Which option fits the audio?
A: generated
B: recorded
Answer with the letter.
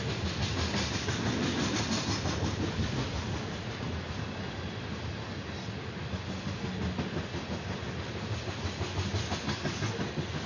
B